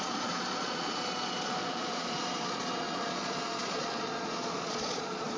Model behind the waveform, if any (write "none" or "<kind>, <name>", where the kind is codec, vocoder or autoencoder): vocoder, Vocos